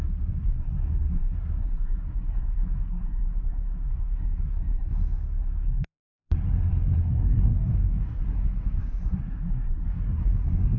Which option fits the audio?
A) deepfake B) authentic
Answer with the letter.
A